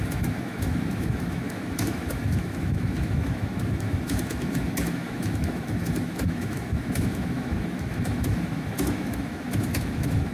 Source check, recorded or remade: remade